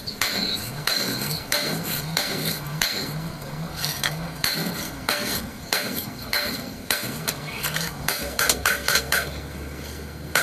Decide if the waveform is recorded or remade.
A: remade